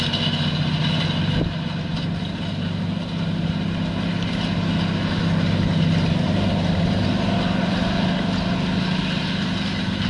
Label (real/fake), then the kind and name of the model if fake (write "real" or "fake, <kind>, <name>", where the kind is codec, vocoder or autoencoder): real